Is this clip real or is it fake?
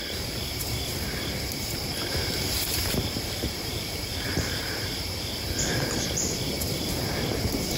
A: fake